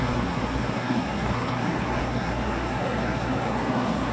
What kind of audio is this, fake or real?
fake